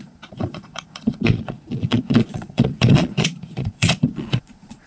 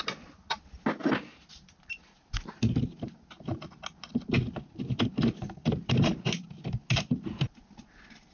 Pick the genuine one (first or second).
second